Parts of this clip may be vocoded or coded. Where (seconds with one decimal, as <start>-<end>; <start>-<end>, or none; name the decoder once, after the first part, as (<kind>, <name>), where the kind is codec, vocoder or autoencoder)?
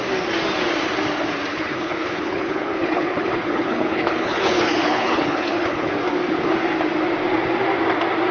1.5-5.9 (codec, HILCodec)